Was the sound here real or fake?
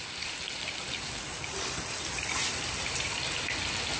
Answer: real